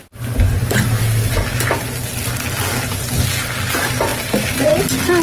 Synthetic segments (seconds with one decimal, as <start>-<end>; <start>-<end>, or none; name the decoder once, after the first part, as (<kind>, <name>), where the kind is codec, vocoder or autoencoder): 0.6-1.2 (vocoder, BigVGAN v2)